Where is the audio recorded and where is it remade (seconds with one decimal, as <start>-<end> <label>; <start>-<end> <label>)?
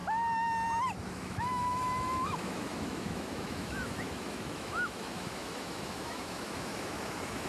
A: 0.0-1.1 recorded; 1.1-7.5 remade